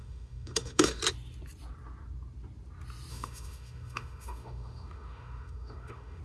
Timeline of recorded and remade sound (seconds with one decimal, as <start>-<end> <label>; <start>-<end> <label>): 0.0-1.0 remade; 1.0-3.1 recorded; 3.1-6.2 remade